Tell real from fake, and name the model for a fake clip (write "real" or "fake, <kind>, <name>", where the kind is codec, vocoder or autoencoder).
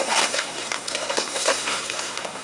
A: fake, codec, SNAC